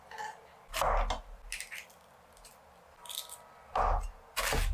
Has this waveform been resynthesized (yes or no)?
no